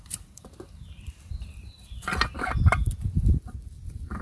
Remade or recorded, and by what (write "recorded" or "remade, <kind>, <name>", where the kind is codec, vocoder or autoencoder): remade, vocoder, BigVGAN v2